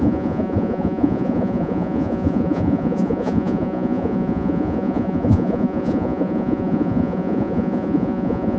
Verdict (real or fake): fake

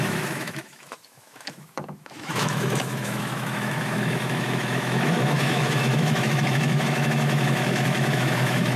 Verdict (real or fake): fake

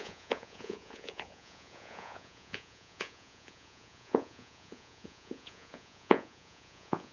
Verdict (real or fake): fake